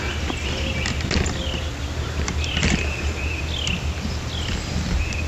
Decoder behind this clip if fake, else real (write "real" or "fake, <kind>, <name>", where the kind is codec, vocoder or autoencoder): real